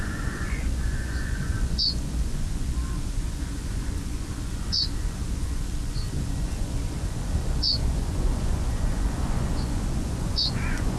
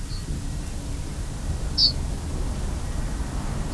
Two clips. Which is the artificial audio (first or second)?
first